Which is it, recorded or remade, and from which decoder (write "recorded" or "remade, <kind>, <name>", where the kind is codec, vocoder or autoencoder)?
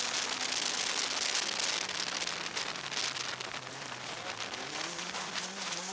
recorded